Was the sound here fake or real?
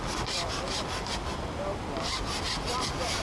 real